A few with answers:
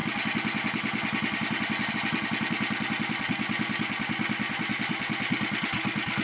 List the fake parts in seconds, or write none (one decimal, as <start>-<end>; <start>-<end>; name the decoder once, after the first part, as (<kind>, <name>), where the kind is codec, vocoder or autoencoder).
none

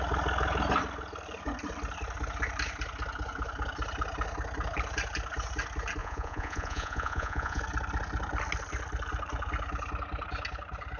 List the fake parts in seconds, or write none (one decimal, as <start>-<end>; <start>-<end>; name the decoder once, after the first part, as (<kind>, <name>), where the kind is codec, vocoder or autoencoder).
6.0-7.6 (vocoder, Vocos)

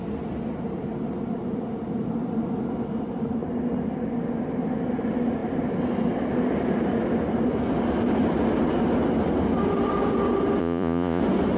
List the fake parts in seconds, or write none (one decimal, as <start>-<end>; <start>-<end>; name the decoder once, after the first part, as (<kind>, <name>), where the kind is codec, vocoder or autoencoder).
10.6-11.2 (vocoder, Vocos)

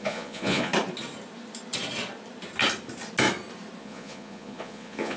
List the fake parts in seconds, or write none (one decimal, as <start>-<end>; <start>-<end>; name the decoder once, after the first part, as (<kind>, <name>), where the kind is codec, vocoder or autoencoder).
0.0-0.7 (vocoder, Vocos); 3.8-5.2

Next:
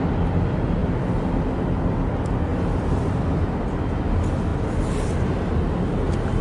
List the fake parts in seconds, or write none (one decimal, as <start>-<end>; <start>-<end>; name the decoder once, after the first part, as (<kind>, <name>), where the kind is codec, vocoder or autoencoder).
none